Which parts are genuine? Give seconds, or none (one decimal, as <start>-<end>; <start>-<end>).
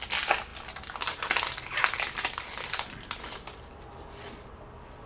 0.0-5.1